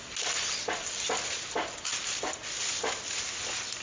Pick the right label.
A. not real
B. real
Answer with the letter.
B